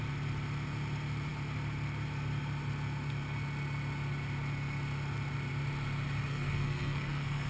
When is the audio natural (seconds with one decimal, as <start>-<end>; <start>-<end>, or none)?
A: 0.0-6.3